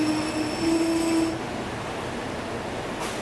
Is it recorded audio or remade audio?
recorded